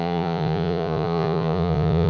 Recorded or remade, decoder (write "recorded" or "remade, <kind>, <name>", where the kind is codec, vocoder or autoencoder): remade, vocoder, Vocos